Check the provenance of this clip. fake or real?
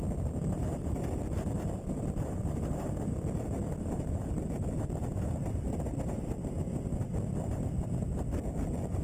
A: real